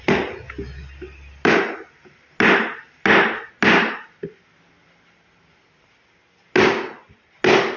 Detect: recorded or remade recorded